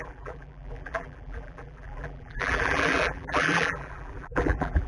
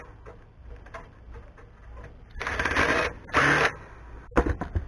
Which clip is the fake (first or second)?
first